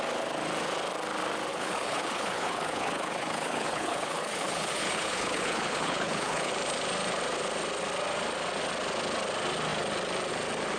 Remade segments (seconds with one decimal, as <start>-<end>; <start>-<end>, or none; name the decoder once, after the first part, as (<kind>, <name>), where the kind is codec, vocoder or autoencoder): 1.5-6.5 (codec, HILCodec)